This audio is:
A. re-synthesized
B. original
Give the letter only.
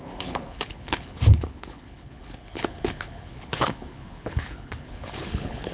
A